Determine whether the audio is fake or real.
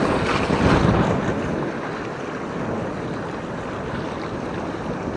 real